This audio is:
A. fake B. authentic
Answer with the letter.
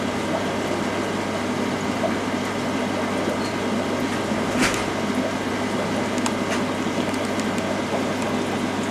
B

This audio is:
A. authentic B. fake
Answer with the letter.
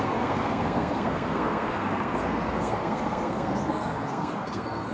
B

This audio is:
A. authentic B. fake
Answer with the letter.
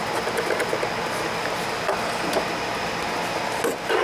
A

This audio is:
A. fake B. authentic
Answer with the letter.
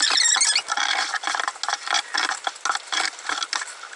B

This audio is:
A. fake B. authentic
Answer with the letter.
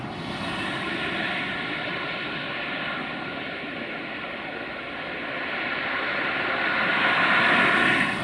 B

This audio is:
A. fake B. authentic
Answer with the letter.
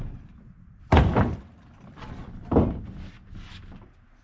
B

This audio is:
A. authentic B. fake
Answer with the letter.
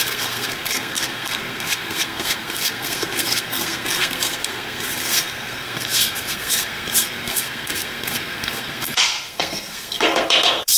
B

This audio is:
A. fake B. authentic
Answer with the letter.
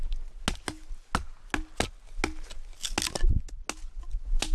B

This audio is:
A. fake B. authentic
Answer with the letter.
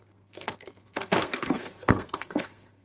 A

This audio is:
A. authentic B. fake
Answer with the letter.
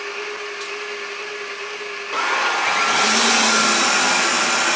A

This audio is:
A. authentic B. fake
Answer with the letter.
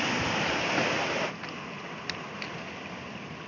A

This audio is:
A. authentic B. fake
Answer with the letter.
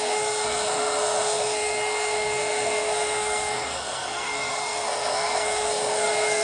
B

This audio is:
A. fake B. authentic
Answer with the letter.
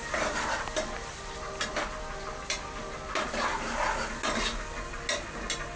B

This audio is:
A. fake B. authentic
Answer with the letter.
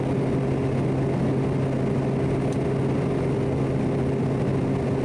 B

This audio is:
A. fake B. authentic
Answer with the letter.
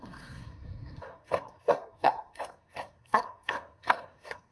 A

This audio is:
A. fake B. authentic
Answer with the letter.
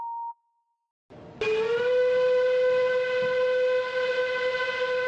B